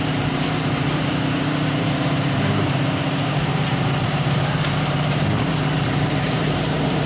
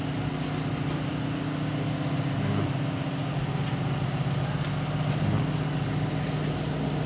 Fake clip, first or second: first